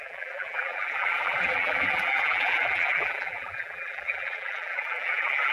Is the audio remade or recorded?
remade